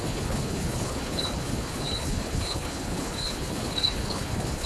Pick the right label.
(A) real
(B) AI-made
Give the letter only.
B